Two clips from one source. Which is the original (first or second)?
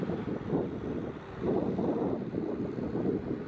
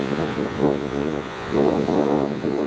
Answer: first